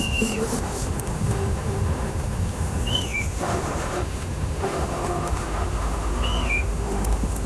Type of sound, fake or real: fake